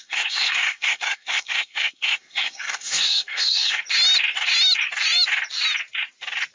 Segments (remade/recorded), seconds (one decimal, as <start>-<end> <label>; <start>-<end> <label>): 0.0-3.8 remade; 3.8-6.5 recorded